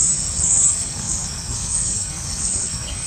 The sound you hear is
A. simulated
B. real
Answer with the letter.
A